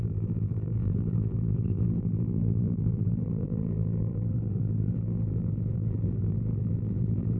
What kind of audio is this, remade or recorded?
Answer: remade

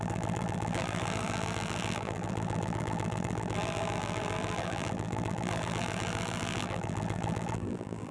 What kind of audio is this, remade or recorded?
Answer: remade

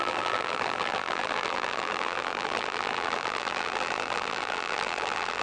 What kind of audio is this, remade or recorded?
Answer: remade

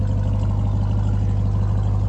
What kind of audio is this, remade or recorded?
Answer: recorded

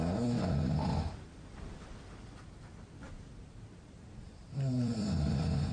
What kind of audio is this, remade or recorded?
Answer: remade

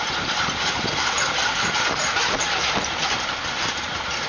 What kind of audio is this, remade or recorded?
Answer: remade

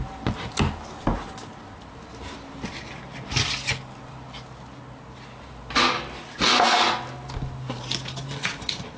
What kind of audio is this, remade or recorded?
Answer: recorded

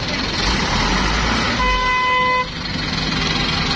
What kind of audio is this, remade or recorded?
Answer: recorded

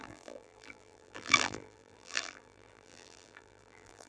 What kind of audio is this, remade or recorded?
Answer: remade